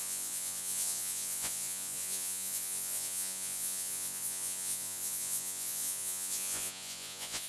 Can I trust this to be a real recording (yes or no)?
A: no